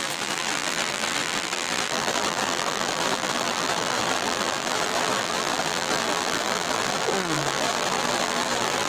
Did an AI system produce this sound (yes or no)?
yes